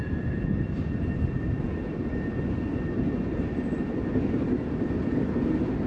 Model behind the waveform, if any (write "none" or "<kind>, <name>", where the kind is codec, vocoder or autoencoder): none